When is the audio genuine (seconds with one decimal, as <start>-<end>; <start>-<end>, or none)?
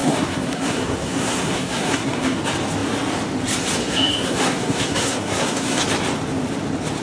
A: 2.4-3.8; 5.8-7.0